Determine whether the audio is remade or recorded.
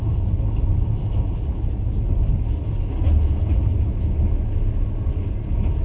recorded